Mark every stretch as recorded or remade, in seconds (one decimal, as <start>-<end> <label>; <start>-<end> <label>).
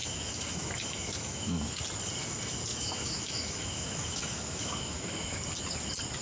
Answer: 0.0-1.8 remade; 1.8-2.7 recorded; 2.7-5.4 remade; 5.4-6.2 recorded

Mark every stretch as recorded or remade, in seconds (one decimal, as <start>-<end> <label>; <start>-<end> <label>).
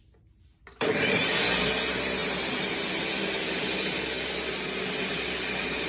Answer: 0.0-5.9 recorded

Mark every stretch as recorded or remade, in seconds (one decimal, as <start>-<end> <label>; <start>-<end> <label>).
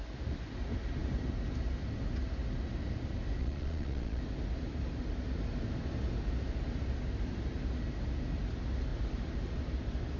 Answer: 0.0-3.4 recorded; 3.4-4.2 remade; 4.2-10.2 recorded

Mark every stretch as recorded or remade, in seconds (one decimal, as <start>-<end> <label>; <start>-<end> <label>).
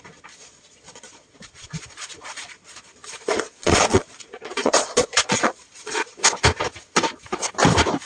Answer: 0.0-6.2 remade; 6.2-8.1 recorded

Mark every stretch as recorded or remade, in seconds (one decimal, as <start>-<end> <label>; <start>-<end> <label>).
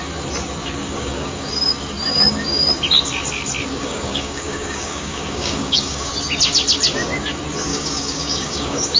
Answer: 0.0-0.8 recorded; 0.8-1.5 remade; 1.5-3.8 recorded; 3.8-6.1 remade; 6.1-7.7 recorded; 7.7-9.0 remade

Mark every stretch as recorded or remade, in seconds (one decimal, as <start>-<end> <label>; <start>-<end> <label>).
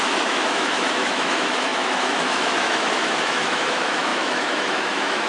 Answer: 0.0-5.3 remade